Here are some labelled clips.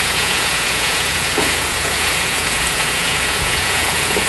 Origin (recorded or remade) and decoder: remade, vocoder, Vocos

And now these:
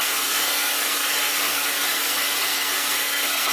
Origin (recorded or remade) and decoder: remade, codec, SNAC